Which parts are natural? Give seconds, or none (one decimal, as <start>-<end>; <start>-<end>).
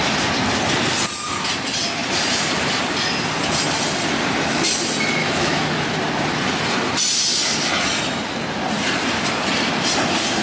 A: 0.0-5.2; 6.0-10.4